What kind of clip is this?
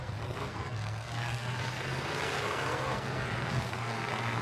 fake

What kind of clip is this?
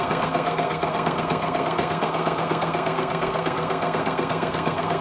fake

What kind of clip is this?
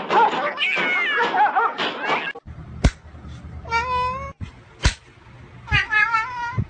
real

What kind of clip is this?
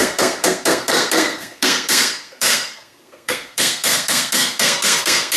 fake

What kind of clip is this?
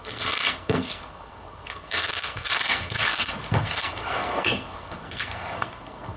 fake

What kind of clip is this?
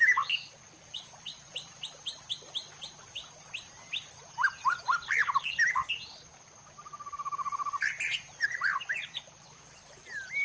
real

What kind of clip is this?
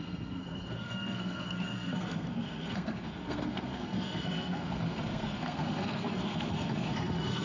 fake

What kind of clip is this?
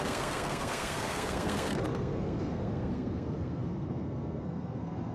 fake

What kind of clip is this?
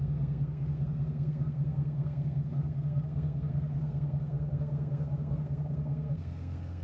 fake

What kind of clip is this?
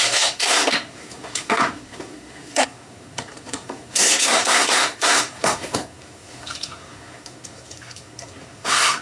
fake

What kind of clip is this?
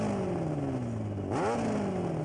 real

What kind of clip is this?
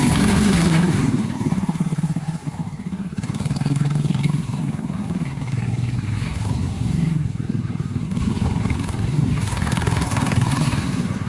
fake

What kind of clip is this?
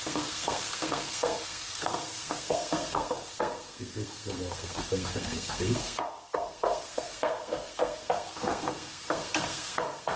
fake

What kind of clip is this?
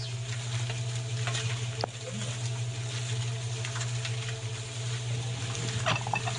real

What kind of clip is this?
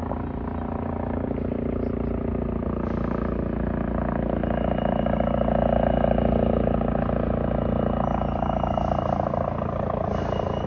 real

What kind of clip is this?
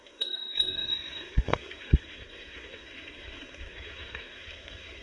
fake